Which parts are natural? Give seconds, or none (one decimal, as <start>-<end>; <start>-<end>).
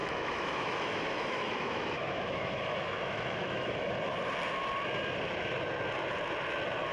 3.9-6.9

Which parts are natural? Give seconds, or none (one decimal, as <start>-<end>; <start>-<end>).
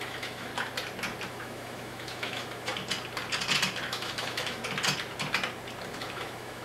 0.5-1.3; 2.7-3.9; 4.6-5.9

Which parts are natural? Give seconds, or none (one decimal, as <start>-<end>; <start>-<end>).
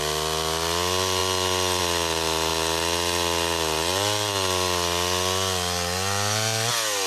0.0-7.1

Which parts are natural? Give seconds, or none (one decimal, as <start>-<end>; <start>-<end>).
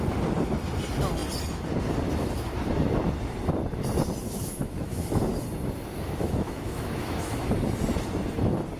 0.0-4.2; 5.3-5.9; 7.5-8.8